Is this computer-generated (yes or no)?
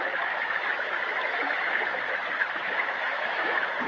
yes